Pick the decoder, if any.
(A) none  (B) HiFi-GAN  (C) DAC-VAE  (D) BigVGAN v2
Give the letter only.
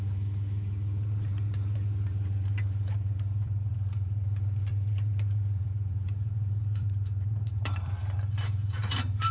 D